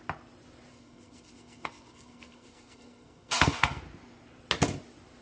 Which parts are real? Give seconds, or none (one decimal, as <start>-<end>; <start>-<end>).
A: 0.0-0.7; 3.8-5.2